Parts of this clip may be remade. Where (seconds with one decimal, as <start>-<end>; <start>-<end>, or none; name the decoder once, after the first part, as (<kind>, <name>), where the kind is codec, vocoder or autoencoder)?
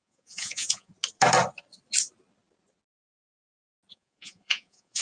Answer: 0.0-0.9 (vocoder, Vocos); 3.9-5.0